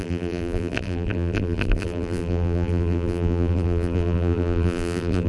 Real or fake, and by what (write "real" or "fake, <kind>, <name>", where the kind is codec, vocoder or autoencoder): fake, vocoder, BigVGAN v2